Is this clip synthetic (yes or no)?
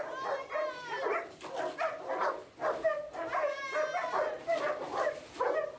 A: no